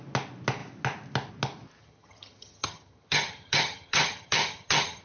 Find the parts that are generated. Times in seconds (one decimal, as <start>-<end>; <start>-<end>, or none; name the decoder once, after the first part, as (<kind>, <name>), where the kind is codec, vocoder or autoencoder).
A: 1.8-5.0 (vocoder, HiFi-GAN)